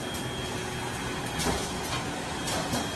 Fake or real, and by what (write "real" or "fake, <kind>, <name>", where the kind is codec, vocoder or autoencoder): real